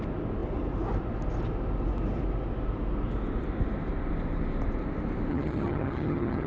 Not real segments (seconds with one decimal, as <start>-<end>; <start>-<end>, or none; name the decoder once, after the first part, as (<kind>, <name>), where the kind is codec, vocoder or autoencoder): 5.3-6.5 (vocoder, HiFi-GAN)